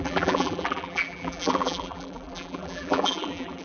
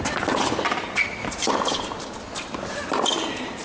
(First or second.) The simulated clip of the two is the first